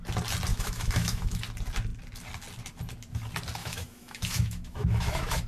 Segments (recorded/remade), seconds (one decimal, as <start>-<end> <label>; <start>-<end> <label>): 0.0-0.5 recorded; 0.5-1.4 remade; 1.4-3.6 recorded; 3.6-5.5 remade